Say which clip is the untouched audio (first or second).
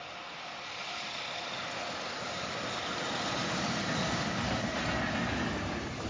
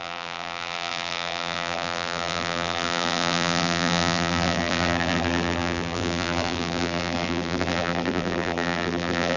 first